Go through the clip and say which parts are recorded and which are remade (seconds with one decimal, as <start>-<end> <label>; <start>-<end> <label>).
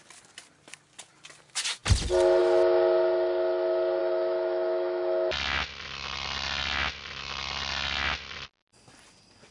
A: 0.0-4.0 recorded; 4.0-5.3 remade; 5.3-9.5 recorded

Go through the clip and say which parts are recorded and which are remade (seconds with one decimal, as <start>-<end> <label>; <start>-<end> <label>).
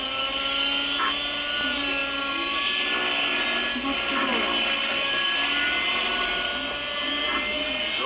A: 0.0-8.1 recorded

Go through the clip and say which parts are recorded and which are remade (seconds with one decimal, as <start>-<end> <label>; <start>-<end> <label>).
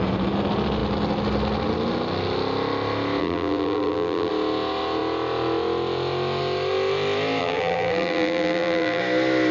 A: 0.0-3.2 recorded; 3.2-4.3 remade; 4.3-7.4 recorded; 7.4-9.0 remade; 9.0-9.5 recorded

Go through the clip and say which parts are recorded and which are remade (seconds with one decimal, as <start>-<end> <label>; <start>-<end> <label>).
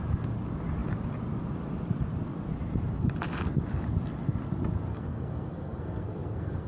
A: 0.0-4.9 recorded; 4.9-6.7 remade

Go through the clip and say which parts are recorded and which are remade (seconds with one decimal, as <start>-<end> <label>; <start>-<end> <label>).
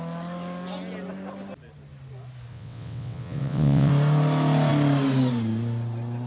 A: 0.0-2.5 recorded; 2.5-3.9 remade; 3.9-6.3 recorded